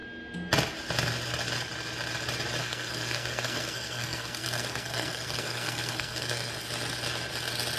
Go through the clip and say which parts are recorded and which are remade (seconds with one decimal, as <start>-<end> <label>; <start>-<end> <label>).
0.0-2.6 recorded; 2.6-6.5 remade; 6.5-7.8 recorded